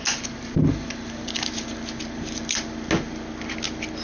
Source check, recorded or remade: recorded